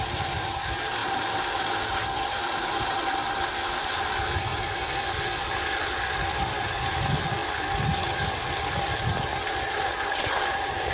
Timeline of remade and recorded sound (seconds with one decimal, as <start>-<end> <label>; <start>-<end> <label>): 0.0-10.9 recorded